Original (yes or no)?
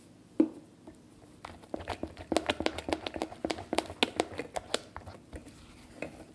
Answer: yes